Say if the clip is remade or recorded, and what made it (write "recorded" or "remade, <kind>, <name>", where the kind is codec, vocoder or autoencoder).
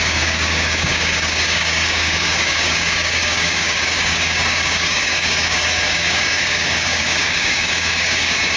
remade, codec, DAC